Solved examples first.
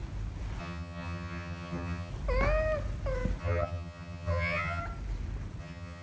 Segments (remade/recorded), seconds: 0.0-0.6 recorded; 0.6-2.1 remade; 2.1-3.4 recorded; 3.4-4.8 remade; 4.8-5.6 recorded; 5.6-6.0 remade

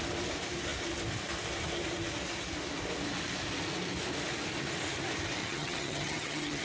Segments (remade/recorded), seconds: 0.0-5.4 recorded; 5.4-6.6 remade

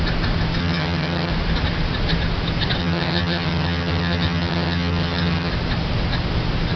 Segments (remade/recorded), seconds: 0.0-0.6 recorded; 0.6-1.3 remade; 1.3-2.8 recorded; 2.8-5.5 remade; 5.5-6.8 recorded

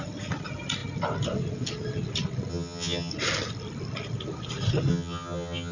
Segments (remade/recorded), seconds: 0.0-2.5 recorded; 2.5-3.1 remade; 3.1-4.9 recorded; 4.9-5.7 remade

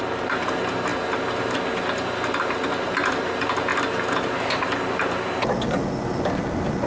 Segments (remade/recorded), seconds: 0.0-6.9 recorded

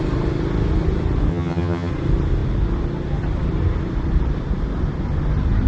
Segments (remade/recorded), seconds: 0.0-1.3 recorded; 1.3-1.9 remade; 1.9-5.7 recorded